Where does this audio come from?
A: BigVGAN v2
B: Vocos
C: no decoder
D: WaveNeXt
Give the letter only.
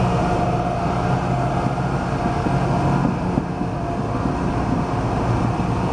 C